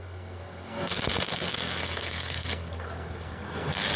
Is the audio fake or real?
fake